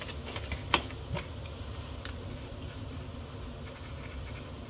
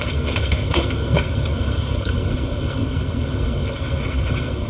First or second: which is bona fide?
first